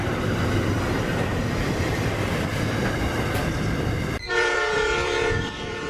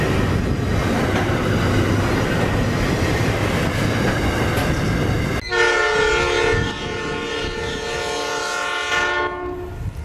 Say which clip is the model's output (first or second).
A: first